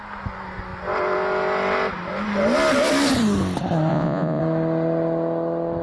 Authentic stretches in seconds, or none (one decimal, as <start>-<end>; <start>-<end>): 0.0-3.9; 4.4-5.8

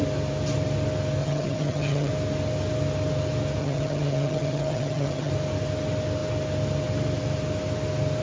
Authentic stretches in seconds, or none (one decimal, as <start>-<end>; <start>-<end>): 0.0-1.2; 2.1-3.6; 5.3-8.2

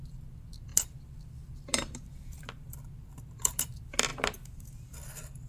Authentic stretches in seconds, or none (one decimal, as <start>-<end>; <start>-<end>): none

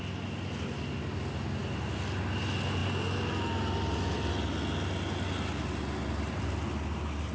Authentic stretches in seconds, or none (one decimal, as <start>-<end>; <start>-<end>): 0.0-7.3

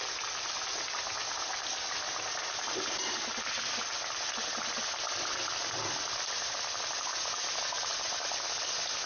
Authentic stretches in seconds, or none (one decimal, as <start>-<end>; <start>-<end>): 0.0-9.1

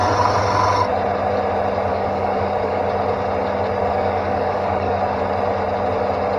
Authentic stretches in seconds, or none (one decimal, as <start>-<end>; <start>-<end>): 0.0-1.9; 2.8-3.9; 5.0-6.4

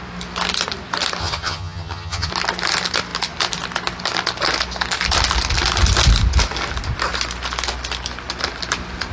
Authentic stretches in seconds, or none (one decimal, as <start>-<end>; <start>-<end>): 0.0-1.2; 2.3-9.1